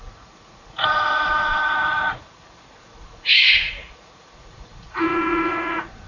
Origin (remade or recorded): remade